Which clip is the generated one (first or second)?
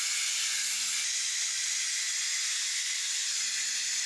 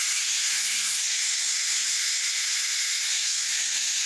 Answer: second